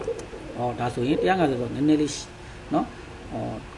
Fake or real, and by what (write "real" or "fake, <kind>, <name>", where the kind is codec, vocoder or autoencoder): real